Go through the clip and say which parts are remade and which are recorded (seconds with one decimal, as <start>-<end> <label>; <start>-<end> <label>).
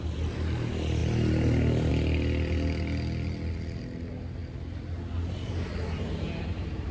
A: 0.0-6.9 recorded